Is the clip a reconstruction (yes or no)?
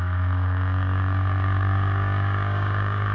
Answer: yes